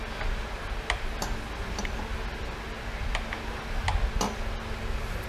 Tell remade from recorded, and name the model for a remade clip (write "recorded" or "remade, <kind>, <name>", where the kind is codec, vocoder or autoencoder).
recorded